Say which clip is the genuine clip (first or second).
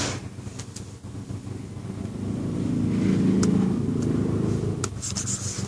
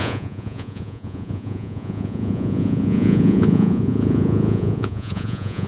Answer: first